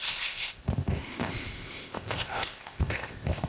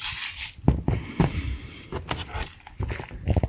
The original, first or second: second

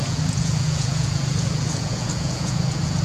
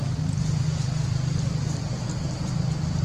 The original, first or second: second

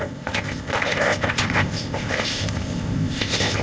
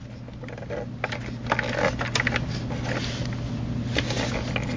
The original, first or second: second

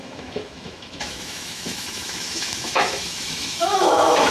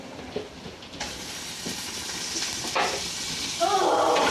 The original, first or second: second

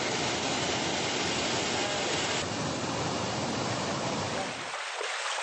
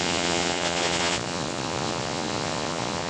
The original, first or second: first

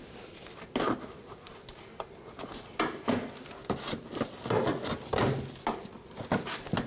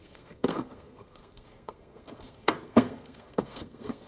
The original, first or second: first